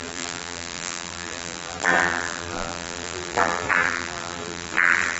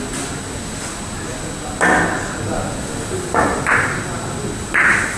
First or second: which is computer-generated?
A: first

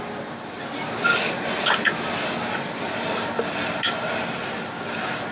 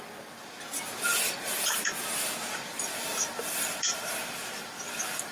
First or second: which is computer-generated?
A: second